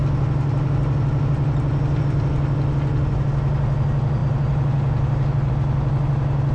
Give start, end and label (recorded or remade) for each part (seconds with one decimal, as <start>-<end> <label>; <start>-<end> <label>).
0.0-6.5 recorded